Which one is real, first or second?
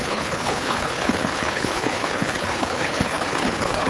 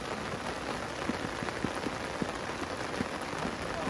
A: second